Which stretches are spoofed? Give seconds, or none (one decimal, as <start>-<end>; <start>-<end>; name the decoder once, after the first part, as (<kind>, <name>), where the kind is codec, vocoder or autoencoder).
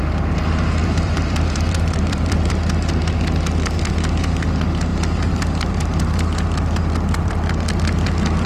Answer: 0.8-2.5 (vocoder, BigVGAN v2)